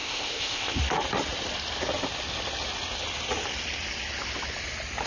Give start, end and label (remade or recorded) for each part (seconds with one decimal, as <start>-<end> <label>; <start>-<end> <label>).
0.0-0.8 remade; 0.8-5.1 recorded